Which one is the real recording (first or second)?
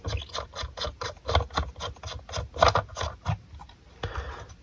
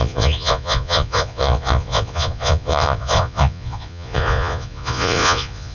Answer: first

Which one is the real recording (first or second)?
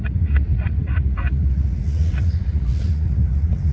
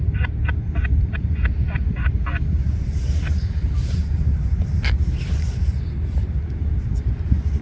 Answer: second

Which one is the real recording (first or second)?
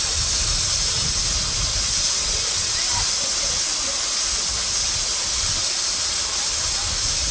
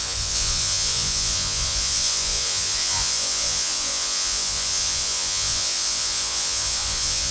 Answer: first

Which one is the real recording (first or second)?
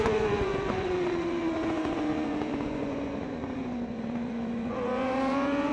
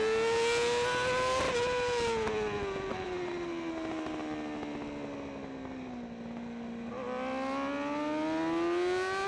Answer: second